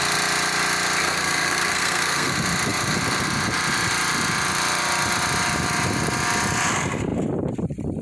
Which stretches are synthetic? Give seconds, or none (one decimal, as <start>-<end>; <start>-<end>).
1.0-2.3